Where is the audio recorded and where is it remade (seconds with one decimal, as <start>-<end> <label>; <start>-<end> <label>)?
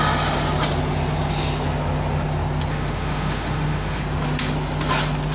0.0-2.7 recorded; 2.7-4.0 remade; 4.0-5.3 recorded